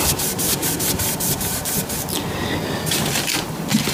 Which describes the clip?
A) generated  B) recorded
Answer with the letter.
B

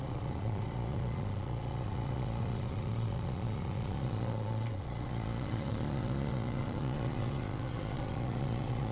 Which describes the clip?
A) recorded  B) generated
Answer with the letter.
B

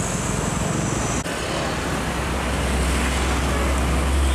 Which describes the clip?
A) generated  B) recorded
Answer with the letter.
B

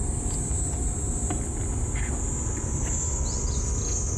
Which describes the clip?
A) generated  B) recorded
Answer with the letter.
B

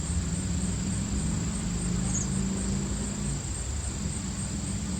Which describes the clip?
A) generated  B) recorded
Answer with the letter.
B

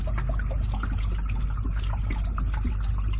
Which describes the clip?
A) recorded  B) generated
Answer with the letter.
A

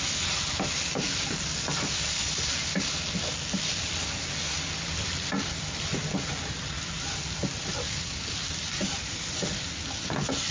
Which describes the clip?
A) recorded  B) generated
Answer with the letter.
A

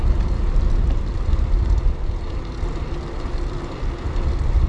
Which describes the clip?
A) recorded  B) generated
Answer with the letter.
A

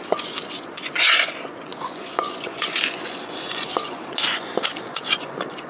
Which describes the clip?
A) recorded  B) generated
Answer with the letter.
B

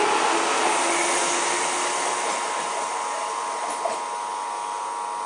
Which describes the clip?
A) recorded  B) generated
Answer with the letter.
A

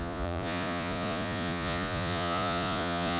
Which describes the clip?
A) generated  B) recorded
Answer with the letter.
A